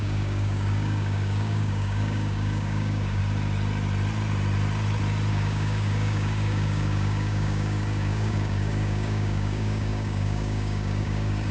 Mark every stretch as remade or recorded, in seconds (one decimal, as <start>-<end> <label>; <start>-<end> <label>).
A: 0.0-3.2 remade; 3.2-5.3 recorded; 5.3-11.5 remade